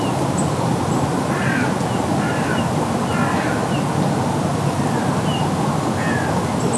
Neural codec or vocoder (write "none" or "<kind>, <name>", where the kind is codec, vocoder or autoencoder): none